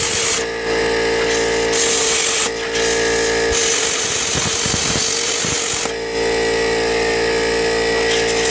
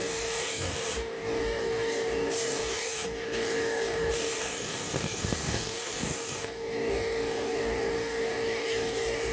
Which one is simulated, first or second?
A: second